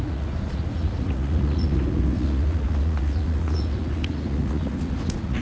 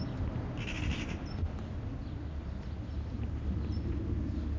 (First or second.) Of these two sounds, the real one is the second